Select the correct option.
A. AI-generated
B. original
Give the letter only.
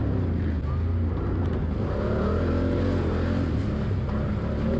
B